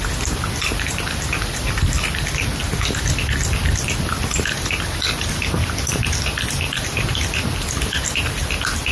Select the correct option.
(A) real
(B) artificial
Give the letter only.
B